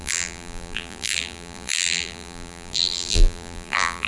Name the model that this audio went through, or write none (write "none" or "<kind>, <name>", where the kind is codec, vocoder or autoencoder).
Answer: vocoder, BigVGAN v2